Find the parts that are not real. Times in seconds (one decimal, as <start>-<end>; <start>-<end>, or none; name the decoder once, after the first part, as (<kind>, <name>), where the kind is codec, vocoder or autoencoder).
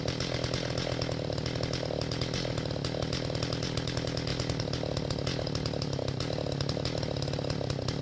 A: none